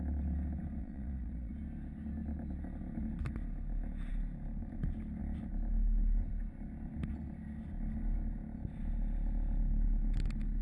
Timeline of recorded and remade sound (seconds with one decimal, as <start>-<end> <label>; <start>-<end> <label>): 0.0-0.8 recorded; 0.8-1.5 remade; 1.5-10.6 recorded